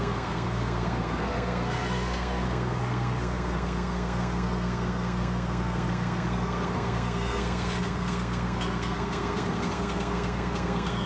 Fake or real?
fake